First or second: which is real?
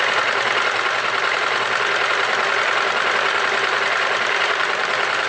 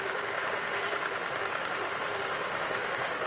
first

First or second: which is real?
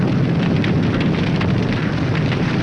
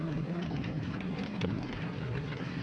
first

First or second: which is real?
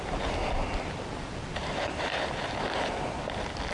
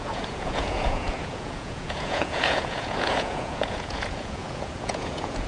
first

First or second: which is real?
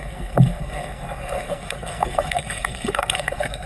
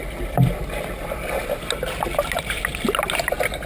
second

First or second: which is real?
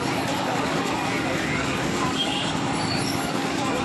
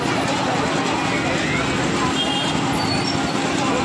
second